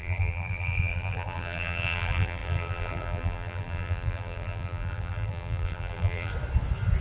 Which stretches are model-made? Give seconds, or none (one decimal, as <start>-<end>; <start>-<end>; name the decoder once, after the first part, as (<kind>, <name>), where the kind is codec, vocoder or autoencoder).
0.0-6.3 (vocoder, BigVGAN v2)